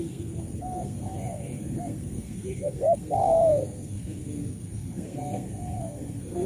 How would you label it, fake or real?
fake